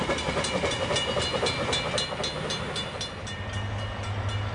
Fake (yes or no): no